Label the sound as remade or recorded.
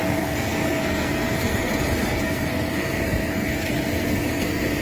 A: remade